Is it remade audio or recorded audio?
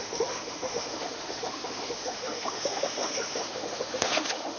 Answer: remade